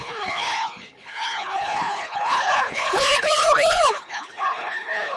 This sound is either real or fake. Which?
fake